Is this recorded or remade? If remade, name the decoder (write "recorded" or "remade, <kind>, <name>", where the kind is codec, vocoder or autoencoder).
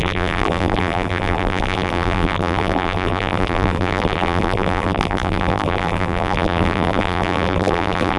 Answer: remade, vocoder, BigVGAN v2